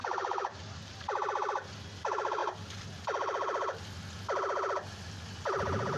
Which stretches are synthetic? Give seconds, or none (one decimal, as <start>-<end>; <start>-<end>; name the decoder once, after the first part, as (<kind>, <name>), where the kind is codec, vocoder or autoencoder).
0.0-0.9 (vocoder, BigVGAN v2); 2.4-5.0